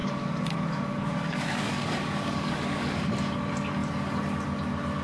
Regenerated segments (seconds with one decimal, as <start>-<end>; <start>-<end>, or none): 0.0-3.0